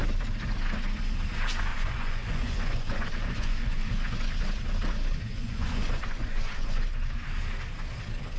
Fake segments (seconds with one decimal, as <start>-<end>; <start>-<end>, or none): 1.7-3.9; 5.3-6.8